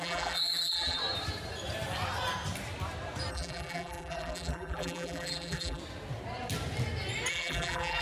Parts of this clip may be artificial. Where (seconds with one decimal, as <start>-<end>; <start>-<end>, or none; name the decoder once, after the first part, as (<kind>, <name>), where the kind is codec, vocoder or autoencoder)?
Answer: 0.0-1.0 (vocoder, BigVGAN v2); 3.3-5.8; 7.3-8.0